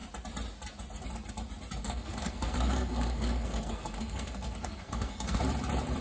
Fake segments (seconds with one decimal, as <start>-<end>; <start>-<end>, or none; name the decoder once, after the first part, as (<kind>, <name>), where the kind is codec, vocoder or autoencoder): 1.8-5.4 (codec, SNAC)